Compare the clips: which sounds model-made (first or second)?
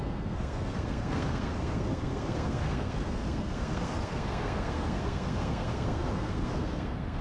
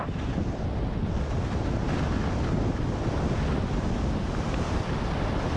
first